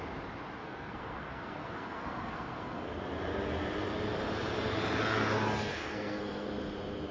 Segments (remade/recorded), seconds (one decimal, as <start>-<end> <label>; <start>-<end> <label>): 0.0-0.6 recorded; 0.6-3.0 remade; 3.0-5.7 recorded; 5.7-6.5 remade; 6.5-7.1 recorded